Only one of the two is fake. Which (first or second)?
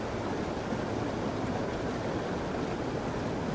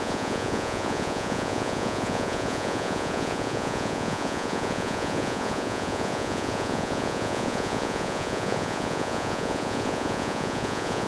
second